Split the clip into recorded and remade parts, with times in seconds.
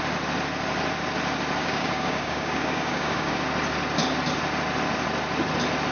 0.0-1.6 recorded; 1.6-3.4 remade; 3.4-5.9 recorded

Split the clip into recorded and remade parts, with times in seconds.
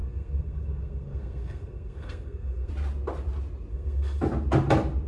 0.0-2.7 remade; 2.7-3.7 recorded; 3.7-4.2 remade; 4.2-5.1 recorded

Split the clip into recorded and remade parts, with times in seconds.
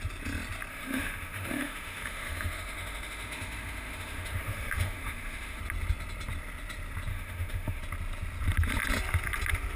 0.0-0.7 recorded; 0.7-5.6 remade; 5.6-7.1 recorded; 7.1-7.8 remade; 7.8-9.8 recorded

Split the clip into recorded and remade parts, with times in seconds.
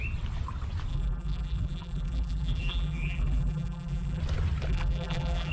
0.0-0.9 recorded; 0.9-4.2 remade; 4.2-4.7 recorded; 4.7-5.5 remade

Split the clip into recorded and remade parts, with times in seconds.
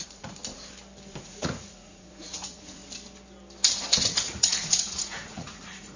0.0-0.4 remade; 0.4-1.2 recorded; 1.2-2.8 remade; 2.8-4.0 recorded; 4.0-6.0 remade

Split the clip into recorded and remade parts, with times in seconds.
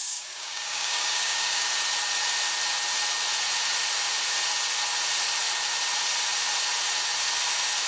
0.0-1.7 remade; 1.7-7.9 recorded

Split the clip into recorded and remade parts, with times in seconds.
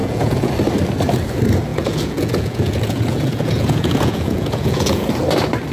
0.0-0.5 remade; 0.5-1.7 recorded; 1.7-5.1 remade; 5.1-5.7 recorded